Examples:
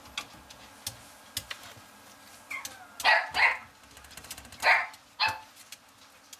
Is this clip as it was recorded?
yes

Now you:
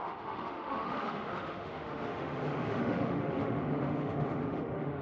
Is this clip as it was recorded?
no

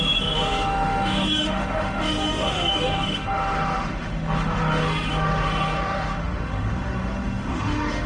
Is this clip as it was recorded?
no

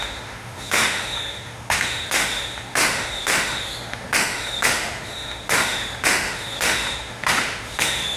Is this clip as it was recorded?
no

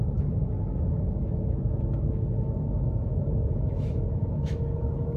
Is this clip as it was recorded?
no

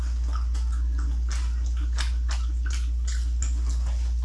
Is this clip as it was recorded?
yes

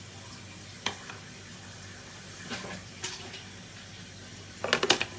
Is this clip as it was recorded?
yes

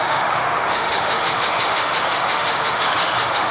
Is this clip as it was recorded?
no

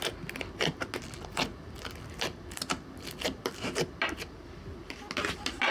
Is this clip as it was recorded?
yes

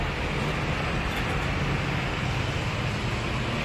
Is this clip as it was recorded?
yes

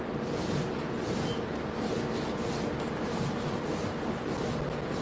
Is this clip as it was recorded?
yes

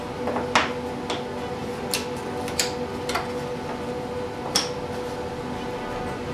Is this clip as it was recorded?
yes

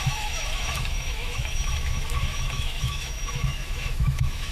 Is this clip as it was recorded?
no